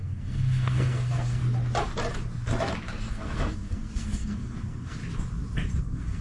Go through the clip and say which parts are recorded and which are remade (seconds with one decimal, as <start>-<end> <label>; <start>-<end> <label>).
0.0-1.4 remade; 1.4-3.1 recorded; 3.1-5.0 remade; 5.0-5.8 recorded; 5.8-6.2 remade